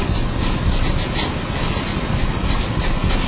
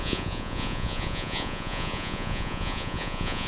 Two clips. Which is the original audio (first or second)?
first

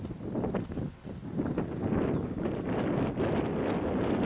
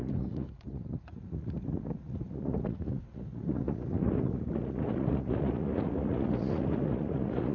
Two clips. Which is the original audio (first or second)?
first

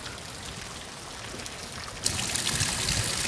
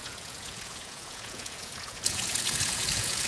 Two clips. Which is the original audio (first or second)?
first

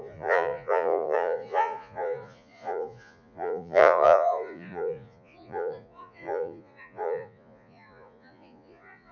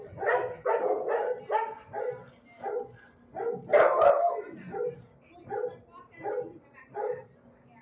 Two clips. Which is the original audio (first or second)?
second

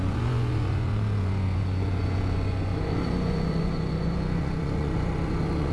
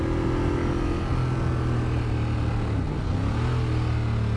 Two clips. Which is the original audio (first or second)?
second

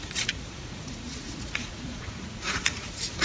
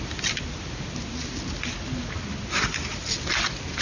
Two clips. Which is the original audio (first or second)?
second